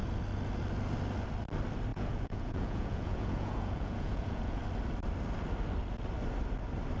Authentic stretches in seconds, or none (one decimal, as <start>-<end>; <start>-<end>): 0.0-1.9; 4.6-7.0

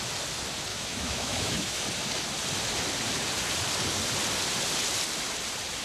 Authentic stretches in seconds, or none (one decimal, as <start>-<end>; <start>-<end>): 0.0-0.7; 1.8-5.8